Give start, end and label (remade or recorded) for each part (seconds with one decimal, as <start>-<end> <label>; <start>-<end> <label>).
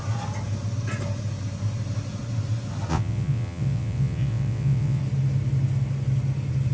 0.0-2.9 recorded; 2.9-5.0 remade; 5.0-6.7 recorded